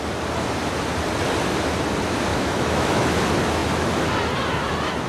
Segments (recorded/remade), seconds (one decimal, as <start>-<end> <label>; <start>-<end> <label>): 0.0-2.3 recorded; 2.3-3.2 remade; 3.2-5.1 recorded